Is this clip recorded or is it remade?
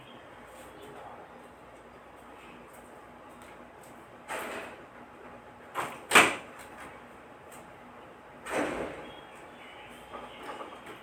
recorded